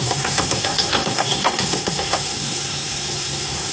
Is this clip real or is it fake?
fake